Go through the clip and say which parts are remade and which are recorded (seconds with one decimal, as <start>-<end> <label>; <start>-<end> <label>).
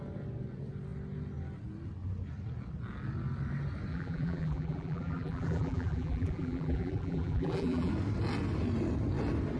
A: 0.0-3.9 recorded; 3.9-7.9 remade; 7.9-9.6 recorded